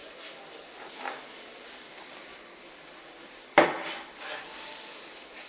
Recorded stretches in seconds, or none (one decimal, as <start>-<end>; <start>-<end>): 0.0-5.5